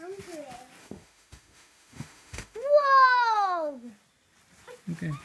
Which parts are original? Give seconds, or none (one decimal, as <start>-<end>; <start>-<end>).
0.0-0.8; 3.9-5.2